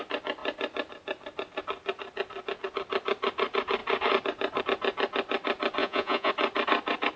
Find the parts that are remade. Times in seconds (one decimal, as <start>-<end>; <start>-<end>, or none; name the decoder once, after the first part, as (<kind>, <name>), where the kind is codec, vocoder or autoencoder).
5.8-6.3 (vocoder, Vocos)